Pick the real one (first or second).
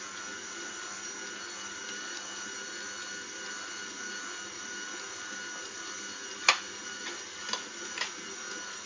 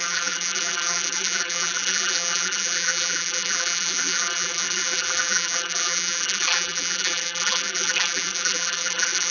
first